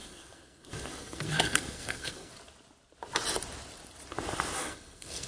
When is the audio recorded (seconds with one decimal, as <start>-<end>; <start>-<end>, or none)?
2.3-4.6